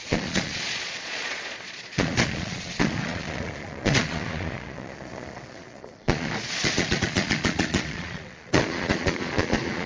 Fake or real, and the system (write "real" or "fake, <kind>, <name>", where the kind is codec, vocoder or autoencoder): fake, vocoder, Vocos